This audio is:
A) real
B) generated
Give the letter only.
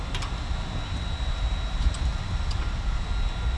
A